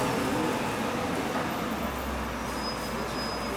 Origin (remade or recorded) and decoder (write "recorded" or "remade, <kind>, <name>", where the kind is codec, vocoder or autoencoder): recorded